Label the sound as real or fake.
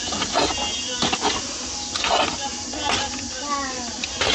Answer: real